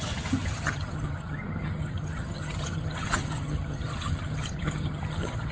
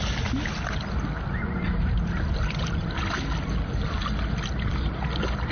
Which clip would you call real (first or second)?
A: second